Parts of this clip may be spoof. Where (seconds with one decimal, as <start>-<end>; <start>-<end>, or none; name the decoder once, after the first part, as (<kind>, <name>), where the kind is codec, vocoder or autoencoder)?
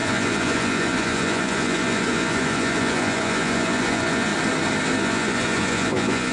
0.0-4.3 (vocoder, Vocos); 5.0-6.3